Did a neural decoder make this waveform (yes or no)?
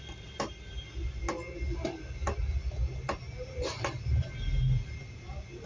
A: no